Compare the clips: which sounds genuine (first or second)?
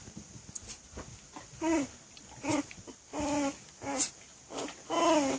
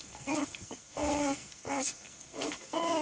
first